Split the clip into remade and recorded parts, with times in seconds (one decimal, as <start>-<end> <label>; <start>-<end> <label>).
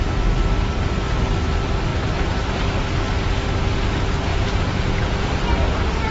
0.0-4.3 recorded; 4.3-5.3 remade; 5.3-6.1 recorded